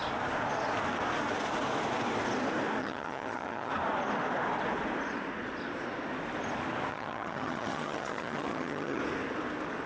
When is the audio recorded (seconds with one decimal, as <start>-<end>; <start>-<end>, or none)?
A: 0.0-2.8; 3.7-6.9; 9.0-9.9